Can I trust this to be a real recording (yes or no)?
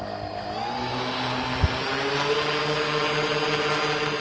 yes